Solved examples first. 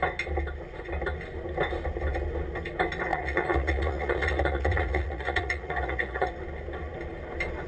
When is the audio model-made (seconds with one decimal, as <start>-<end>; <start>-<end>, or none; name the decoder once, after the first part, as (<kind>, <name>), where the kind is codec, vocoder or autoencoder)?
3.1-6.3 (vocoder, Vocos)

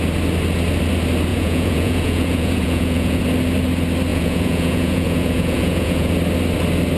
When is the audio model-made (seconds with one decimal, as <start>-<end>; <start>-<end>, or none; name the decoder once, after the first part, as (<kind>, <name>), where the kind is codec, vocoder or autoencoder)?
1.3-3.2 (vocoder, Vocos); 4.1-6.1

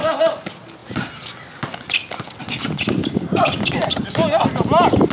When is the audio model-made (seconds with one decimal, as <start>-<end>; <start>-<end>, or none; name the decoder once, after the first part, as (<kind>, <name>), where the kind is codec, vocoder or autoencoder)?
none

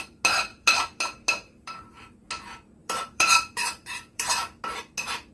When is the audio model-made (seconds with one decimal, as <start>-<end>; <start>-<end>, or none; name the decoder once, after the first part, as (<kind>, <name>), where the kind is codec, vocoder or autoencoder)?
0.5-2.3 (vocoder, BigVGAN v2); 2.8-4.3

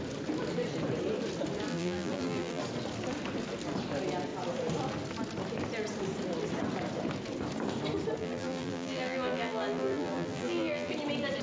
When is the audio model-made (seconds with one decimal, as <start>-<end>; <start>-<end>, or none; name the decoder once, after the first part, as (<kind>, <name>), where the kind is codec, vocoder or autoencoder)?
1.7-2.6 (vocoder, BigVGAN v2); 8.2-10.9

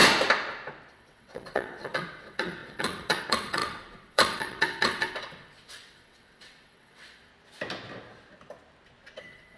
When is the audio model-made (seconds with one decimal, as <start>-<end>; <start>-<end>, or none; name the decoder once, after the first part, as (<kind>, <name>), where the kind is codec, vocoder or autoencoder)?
0.9-7.3 (vocoder, WaveNeXt); 9.2-9.6